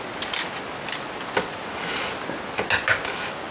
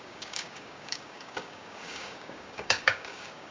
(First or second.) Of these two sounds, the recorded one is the first